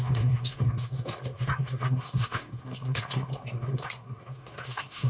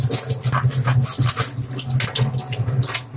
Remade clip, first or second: first